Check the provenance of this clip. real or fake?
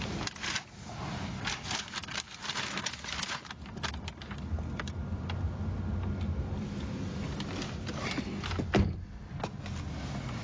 real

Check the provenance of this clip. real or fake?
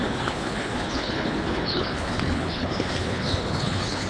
fake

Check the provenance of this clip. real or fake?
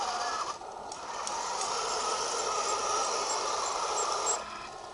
real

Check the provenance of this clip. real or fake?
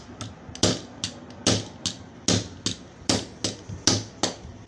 real